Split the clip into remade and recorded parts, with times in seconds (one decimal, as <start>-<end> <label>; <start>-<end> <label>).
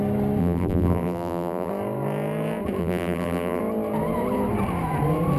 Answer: 0.0-0.4 recorded; 0.4-1.7 remade; 1.7-2.8 recorded; 2.8-3.6 remade; 3.6-5.4 recorded